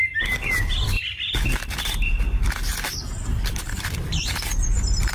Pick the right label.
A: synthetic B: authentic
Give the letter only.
A